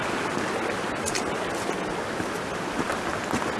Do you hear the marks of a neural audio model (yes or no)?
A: no